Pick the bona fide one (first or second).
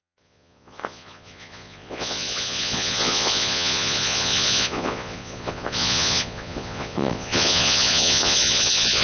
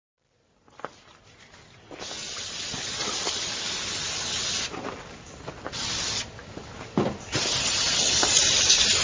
second